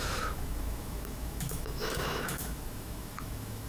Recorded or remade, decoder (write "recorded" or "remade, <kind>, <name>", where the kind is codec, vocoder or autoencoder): remade, autoencoder, DAC-VAE